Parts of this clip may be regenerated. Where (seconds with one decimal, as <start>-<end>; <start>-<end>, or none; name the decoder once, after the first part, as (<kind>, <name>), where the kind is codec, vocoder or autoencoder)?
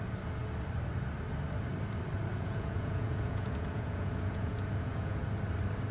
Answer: 2.3-5.2 (vocoder, Vocos)